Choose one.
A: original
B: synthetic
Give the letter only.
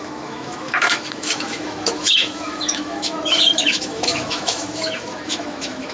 B